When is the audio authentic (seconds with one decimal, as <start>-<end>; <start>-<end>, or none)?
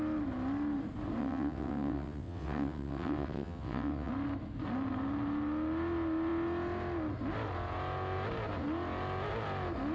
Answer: 0.0-1.2; 4.1-9.9